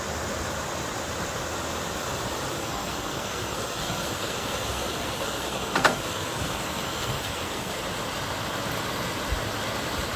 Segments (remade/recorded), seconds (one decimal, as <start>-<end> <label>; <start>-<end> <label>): 0.0-2.6 recorded; 2.6-7.8 remade; 7.8-10.2 recorded